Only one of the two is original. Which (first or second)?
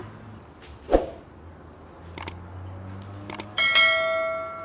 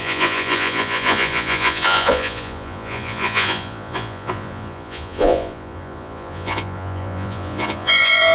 first